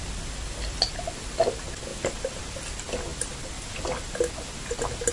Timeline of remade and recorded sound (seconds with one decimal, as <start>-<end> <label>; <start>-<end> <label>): 0.0-5.1 recorded

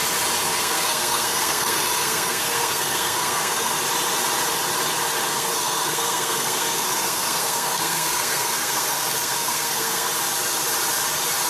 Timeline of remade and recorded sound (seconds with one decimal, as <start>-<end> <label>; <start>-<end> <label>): 0.0-0.6 recorded; 0.6-3.7 remade; 3.7-5.3 recorded; 5.3-10.1 remade; 10.1-11.5 recorded

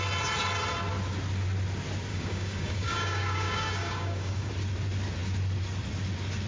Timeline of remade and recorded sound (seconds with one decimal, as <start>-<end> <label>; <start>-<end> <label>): 0.0-2.1 recorded; 2.1-4.5 remade; 4.5-6.5 recorded